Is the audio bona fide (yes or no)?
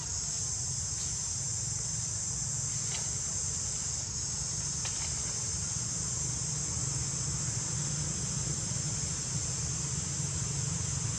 yes